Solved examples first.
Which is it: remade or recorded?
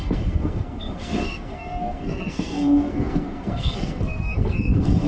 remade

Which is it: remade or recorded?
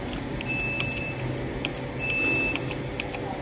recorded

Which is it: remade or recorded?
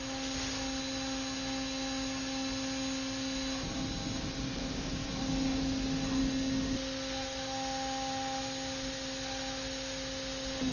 recorded